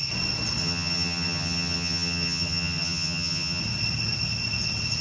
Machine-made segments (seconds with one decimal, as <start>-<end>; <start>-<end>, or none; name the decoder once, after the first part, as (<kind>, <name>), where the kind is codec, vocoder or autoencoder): 0.6-3.6 (vocoder, HiFi-GAN)

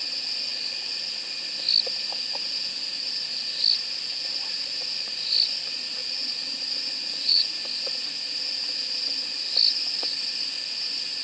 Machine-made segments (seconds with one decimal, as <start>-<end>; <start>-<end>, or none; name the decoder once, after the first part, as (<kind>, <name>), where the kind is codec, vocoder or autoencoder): 6.0-7.5 (vocoder, Vocos)

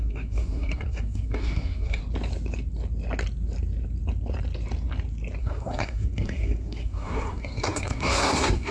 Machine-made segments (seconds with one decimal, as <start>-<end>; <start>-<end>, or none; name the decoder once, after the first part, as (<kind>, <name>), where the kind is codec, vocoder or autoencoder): 0.0-2.0 (codec, SNAC); 5.4-8.7

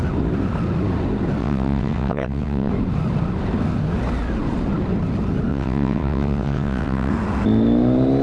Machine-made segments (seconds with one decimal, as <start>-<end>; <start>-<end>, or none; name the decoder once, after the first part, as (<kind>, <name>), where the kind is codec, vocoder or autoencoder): 1.4-2.7 (vocoder, WaveNeXt); 5.5-7.1

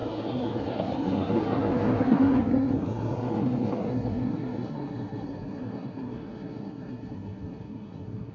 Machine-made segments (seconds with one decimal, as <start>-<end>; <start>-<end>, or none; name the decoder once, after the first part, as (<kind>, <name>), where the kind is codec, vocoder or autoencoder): 0.0-8.3 (codec, SNAC)

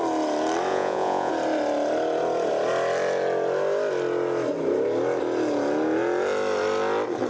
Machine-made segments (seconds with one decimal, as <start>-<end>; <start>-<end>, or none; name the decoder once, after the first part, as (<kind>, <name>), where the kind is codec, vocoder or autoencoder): 0.7-1.3 (vocoder, Vocos)

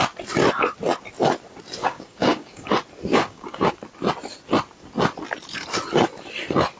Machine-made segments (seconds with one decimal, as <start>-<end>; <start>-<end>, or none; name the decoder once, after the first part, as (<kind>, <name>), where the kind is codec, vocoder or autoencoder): 1.8-2.7 (codec, DAC); 3.1-3.7

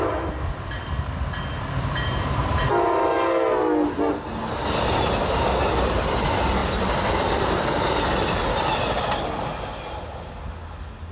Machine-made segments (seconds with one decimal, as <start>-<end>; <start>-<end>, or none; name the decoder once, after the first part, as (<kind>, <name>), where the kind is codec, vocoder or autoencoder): none